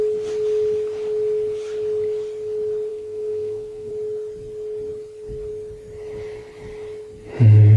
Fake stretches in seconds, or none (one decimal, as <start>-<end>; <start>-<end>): 2.9-3.9